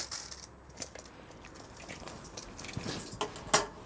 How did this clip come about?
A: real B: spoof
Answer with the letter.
A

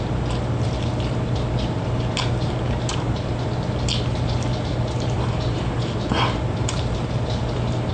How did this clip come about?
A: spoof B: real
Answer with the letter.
A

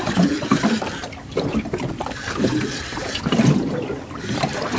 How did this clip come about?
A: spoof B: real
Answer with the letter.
A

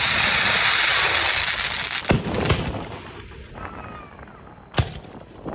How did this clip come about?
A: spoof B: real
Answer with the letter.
B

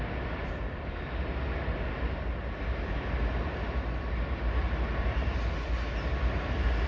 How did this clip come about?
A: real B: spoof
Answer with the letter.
A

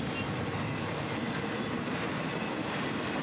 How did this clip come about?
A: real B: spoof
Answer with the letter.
A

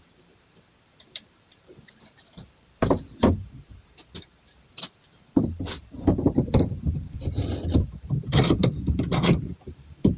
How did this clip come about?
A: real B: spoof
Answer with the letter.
B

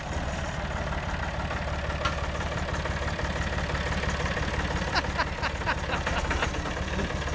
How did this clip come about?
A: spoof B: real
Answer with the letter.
A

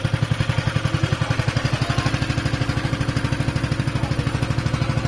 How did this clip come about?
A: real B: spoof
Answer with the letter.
A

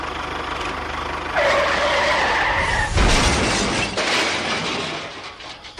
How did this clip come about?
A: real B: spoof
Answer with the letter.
A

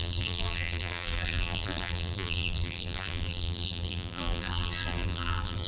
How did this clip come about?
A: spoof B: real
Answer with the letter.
A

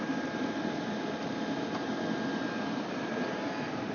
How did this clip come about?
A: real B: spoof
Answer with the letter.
B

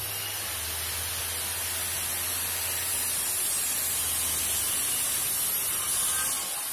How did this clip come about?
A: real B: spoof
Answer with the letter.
A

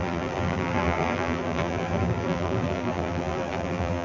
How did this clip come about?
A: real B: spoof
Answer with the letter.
B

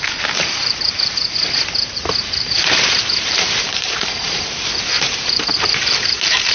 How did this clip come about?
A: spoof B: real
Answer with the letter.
A